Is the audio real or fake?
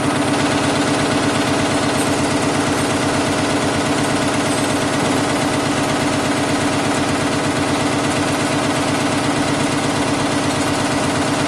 real